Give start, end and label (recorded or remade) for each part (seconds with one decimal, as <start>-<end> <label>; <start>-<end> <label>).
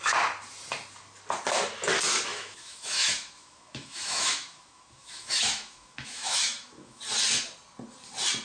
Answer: 0.0-2.3 recorded; 2.3-7.0 remade; 7.0-8.4 recorded